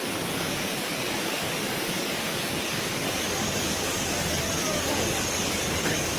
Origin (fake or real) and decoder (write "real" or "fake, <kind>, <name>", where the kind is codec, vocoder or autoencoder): fake, codec, DAC